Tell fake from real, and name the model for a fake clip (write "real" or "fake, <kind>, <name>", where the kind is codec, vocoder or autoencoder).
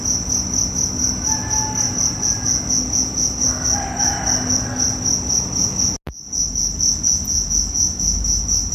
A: real